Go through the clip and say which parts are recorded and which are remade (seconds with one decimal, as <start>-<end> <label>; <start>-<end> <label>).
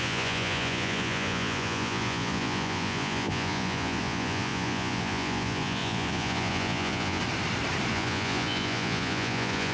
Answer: 0.0-7.2 remade; 7.2-7.9 recorded; 7.9-9.7 remade